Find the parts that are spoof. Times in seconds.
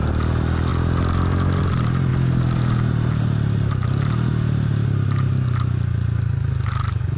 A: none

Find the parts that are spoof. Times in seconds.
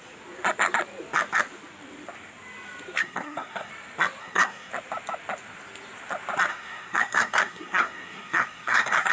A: 3.0-3.7 (codec, SNAC); 4.2-4.7; 6.5-9.1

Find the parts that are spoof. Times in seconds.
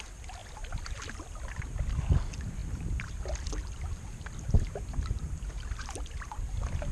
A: none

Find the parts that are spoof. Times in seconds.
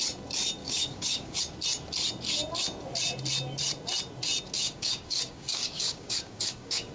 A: 0.6-1.4 (codec, DAC); 4.6-6.9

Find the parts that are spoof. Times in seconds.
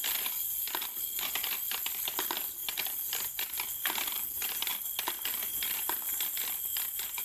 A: none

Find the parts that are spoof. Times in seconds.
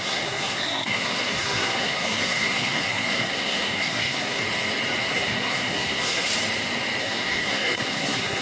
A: 0.0-4.4 (codec, SNAC); 5.1-6.3; 7.0-8.4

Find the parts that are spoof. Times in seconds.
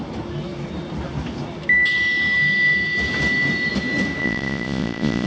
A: 4.2-5.3 (vocoder, Vocos)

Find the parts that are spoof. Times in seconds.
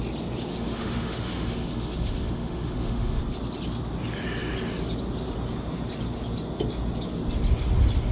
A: 0.5-3.2 (autoencoder, DAC-VAE)